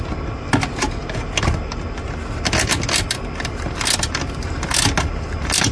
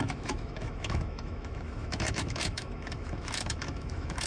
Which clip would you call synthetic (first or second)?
second